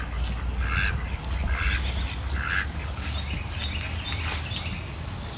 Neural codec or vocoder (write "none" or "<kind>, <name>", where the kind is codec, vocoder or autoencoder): none